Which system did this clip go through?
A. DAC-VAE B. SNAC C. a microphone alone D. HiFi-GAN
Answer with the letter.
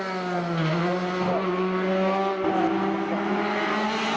C